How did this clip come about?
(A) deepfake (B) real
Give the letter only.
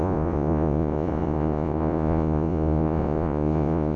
A